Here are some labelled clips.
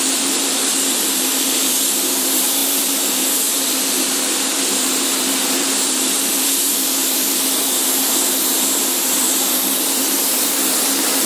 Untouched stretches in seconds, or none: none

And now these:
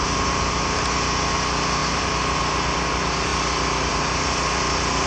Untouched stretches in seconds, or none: 0.0-5.1

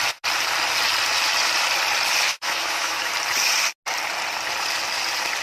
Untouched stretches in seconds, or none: 0.0-2.3; 3.1-5.4